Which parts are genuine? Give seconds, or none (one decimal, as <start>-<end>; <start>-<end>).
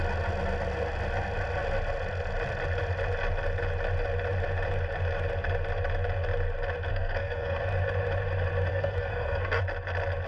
0.0-6.9; 7.6-8.7; 9.6-10.3